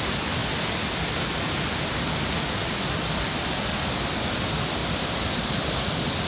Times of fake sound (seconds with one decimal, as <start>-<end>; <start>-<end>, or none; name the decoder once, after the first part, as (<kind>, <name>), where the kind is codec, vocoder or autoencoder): 0.0-6.3 (vocoder, BigVGAN v2)